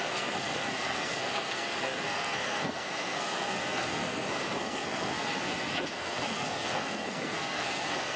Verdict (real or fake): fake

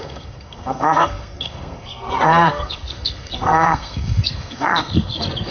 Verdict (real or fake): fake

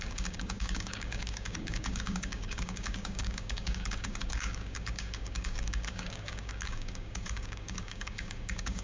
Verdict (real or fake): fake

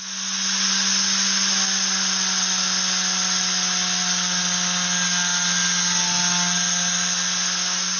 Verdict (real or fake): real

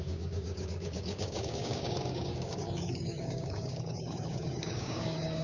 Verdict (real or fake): fake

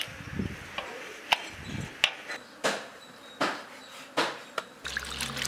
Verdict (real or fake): real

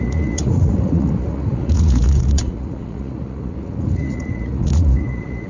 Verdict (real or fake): fake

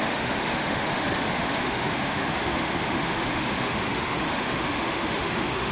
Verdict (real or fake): fake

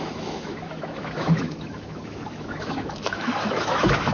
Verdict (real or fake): fake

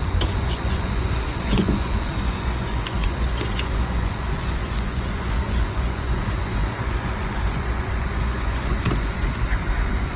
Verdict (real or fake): fake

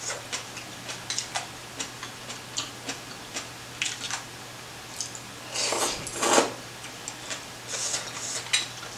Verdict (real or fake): real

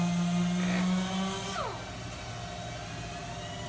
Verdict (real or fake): real